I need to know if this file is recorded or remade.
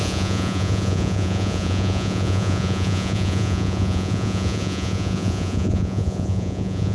remade